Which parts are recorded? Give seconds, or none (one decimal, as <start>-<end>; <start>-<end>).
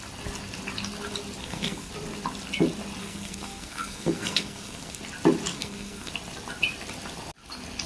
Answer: 0.0-1.4; 1.9-3.0; 5.0-5.5; 6.1-7.9